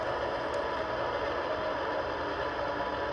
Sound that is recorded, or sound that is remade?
recorded